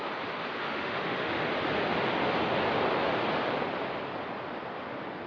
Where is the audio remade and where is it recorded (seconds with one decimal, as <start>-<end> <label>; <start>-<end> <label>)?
0.0-0.6 recorded; 0.6-1.4 remade; 1.4-5.3 recorded